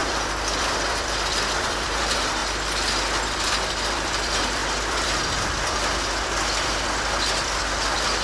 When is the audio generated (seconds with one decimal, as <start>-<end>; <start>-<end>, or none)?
0.0-2.4; 3.2-8.2

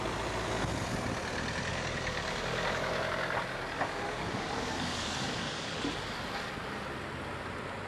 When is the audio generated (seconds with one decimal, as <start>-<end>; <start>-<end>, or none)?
1.7-6.2

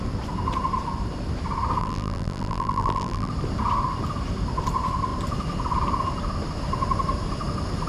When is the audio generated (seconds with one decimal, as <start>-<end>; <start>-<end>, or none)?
1.8-3.3

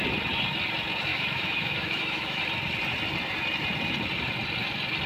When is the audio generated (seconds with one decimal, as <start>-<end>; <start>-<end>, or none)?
1.1-2.4

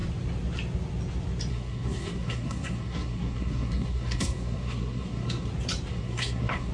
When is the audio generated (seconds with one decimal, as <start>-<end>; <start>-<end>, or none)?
1.5-5.5; 5.9-6.7

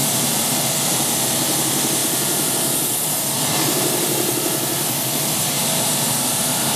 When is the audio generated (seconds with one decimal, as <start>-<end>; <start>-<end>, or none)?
2.0-5.6

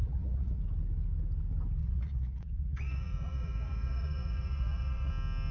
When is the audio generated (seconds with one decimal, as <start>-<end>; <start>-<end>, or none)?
0.0-0.6; 1.8-5.1

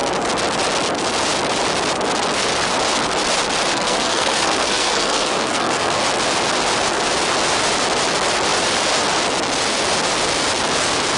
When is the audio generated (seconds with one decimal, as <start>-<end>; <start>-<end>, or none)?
3.7-6.0